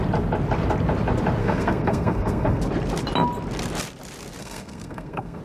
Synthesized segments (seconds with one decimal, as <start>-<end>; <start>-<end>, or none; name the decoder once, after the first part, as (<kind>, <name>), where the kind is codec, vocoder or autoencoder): 1.4-2.6 (codec, SNAC); 4.4-5.4